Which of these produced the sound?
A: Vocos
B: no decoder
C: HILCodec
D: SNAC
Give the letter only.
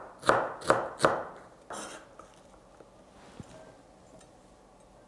B